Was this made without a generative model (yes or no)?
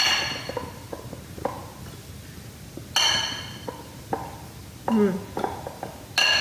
yes